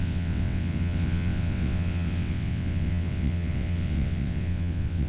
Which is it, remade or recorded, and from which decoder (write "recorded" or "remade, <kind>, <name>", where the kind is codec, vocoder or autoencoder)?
remade, vocoder, WaveNeXt